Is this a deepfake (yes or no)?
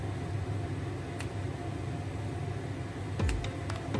no